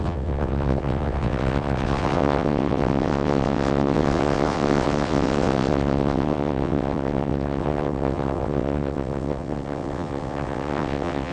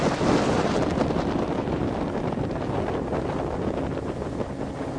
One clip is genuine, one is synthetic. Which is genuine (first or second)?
second